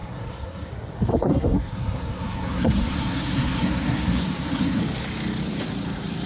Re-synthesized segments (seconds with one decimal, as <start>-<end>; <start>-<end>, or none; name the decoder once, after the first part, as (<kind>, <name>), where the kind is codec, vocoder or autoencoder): 0.0-0.7 (codec, SNAC); 1.1-4.8